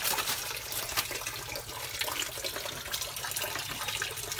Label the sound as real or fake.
real